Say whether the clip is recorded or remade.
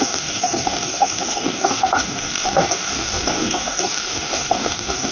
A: remade